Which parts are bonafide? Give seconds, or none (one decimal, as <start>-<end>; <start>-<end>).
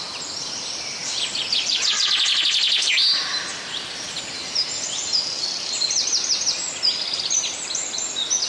0.0-8.5